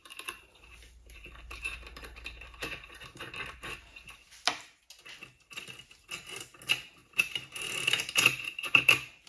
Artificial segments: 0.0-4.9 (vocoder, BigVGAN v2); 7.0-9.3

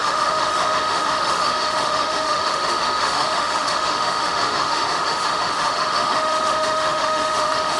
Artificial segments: 0.0-7.8 (autoencoder, DAC-VAE)